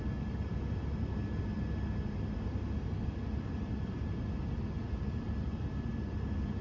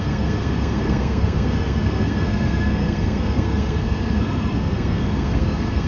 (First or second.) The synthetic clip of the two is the second